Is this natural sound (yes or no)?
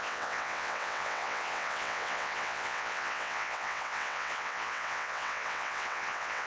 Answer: no